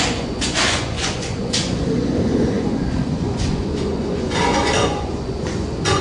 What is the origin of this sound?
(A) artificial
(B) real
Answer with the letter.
A